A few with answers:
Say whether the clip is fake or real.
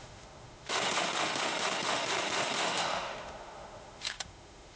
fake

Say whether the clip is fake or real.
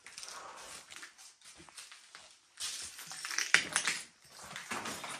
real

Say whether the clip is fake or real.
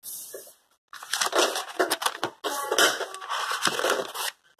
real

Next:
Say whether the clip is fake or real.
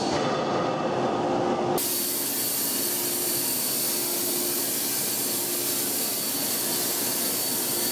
real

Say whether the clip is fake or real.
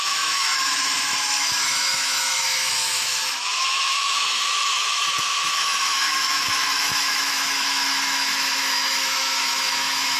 fake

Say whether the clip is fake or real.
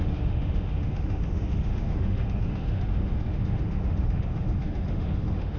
fake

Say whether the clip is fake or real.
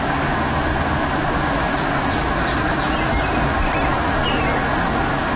real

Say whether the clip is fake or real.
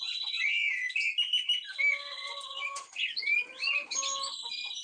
real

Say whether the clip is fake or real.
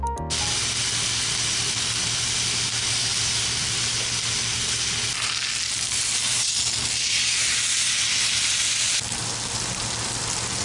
real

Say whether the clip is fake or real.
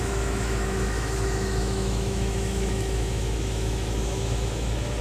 fake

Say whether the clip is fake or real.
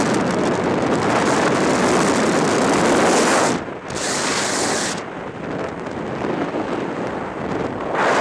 real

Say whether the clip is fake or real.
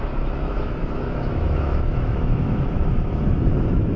fake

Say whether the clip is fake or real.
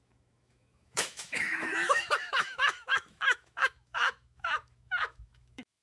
fake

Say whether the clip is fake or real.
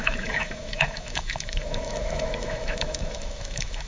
fake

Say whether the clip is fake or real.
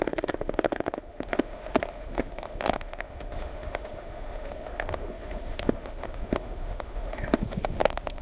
fake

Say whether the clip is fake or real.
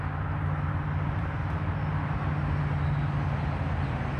real